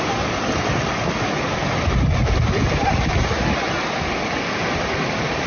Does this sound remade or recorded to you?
recorded